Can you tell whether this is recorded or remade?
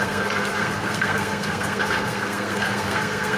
remade